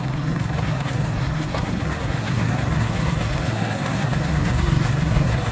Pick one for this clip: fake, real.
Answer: fake